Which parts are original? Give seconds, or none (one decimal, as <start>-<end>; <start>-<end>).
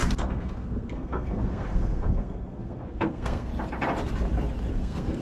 3.5-4.7